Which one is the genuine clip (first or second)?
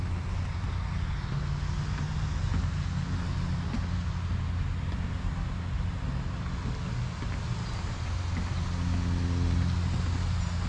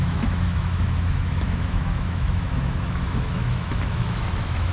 first